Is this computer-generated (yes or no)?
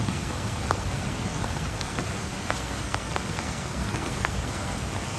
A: yes